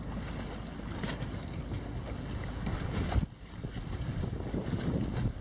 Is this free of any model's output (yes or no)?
yes